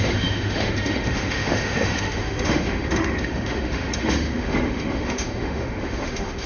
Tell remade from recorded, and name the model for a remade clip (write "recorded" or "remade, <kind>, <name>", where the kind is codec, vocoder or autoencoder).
remade, autoencoder, DAC-VAE